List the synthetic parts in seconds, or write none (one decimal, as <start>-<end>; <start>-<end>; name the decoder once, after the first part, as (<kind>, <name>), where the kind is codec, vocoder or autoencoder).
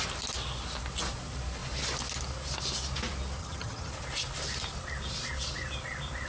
3.4-3.9 (vocoder, HiFi-GAN)